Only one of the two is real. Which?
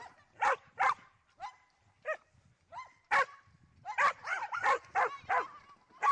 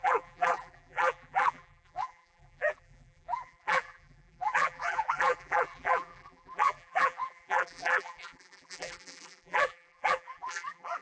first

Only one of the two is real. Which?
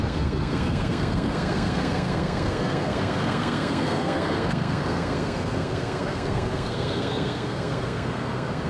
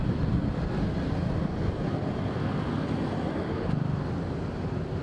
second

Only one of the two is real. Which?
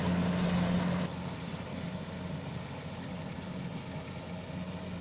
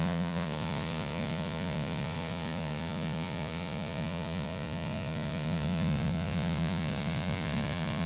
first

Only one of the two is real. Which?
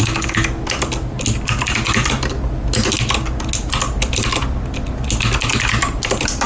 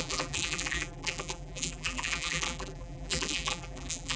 first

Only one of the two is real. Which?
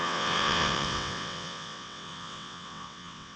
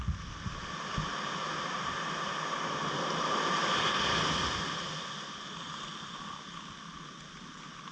second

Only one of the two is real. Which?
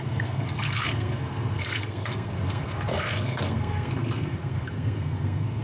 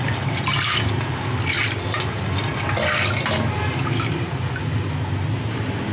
second